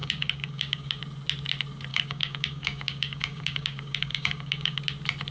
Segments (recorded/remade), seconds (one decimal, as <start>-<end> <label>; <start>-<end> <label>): 0.0-1.0 remade; 1.0-1.9 recorded; 1.9-4.8 remade; 4.8-5.3 recorded

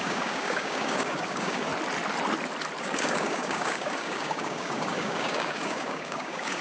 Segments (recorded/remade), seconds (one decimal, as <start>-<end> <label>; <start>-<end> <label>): 0.0-1.7 remade; 1.7-2.8 recorded; 2.8-6.6 remade

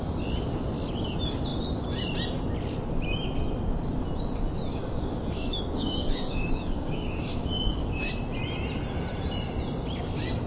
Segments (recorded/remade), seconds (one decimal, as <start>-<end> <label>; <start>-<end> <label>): 0.0-4.7 recorded; 4.7-8.1 remade; 8.1-10.5 recorded

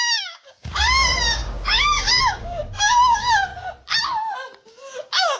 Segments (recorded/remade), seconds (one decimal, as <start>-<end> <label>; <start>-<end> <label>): 0.0-3.5 remade; 3.5-4.7 recorded; 4.7-5.4 remade

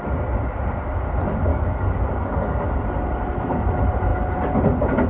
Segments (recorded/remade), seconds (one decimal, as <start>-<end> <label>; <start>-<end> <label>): 0.0-1.5 recorded; 1.5-2.7 remade; 2.7-5.1 recorded

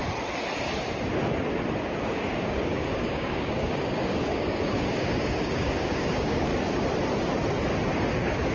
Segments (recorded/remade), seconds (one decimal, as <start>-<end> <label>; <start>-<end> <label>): 0.0-1.8 recorded; 1.8-6.5 remade; 6.5-8.1 recorded; 8.1-8.5 remade